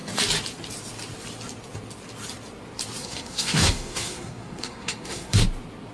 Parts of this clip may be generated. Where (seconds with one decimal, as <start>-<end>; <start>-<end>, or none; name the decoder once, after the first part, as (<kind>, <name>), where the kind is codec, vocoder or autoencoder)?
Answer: 3.0-5.4 (codec, SNAC)